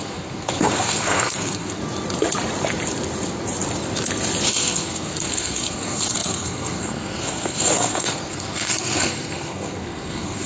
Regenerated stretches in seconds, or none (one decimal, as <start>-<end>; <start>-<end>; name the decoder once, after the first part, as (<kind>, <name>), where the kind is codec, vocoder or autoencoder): 0.0-1.8 (codec, SNAC); 4.5-10.5